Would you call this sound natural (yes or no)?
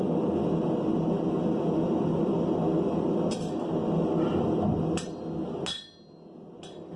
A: yes